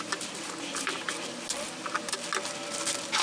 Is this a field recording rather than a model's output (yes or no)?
yes